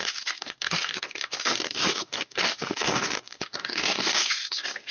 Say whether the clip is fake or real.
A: fake